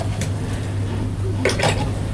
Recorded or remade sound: remade